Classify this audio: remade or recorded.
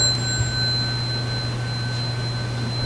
recorded